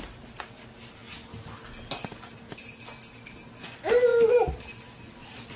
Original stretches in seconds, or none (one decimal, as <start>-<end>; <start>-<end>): 0.0-5.6